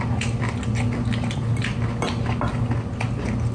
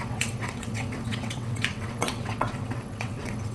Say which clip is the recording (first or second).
first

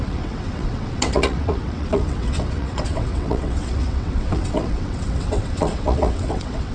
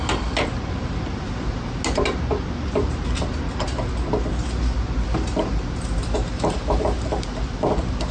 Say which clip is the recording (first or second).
second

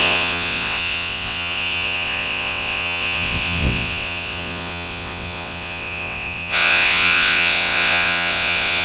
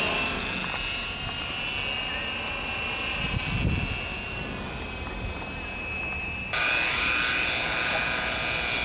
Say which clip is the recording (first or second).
second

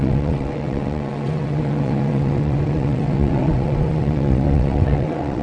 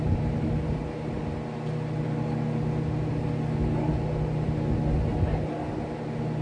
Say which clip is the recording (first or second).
second